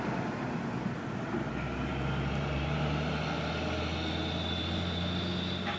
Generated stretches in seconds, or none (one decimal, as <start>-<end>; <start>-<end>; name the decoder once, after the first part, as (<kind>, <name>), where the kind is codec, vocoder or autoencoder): none